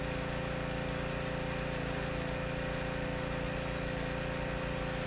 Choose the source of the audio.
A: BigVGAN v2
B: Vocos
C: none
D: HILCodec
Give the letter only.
C